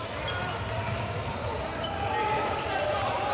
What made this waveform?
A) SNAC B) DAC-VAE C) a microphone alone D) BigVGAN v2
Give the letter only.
C